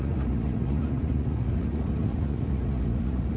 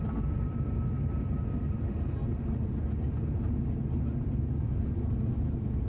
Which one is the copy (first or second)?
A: first